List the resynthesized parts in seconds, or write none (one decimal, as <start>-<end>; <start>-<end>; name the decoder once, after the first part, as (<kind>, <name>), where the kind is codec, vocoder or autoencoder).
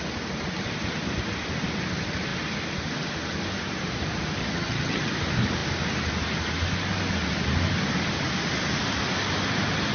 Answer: 4.4-5.1 (vocoder, HiFi-GAN)